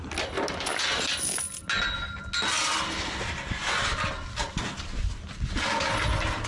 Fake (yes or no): no